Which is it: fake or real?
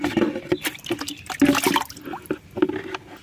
real